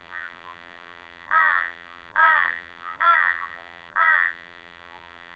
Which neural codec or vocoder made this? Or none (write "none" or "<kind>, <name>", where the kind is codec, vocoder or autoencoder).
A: vocoder, BigVGAN v2